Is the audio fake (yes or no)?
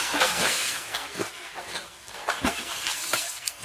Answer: yes